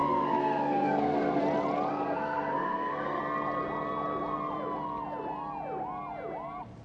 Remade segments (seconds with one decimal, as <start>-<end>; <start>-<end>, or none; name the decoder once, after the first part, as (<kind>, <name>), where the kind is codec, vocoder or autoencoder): 0.0-1.4 (codec, SNAC); 1.9-3.2

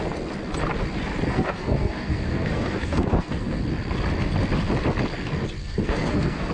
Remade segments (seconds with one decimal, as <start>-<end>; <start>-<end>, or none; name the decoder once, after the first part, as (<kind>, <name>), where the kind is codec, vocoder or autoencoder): 1.3-3.6 (codec, SNAC); 5.6-6.5